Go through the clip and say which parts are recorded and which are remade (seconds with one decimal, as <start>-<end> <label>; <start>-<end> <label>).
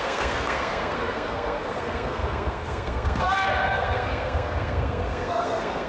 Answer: 0.0-5.9 remade